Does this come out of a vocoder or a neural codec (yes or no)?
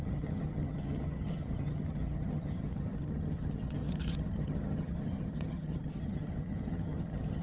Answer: yes